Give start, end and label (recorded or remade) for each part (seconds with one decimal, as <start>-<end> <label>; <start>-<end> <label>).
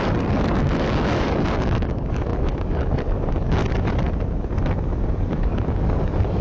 0.0-3.6 remade; 3.6-5.1 recorded; 5.1-6.4 remade